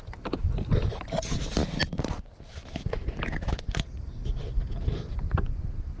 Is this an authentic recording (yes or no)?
yes